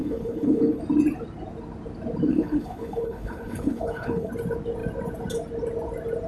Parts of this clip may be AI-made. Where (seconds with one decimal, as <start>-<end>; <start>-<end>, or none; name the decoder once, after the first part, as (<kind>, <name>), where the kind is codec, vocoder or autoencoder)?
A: 0.0-0.8 (codec, HILCodec); 2.3-4.3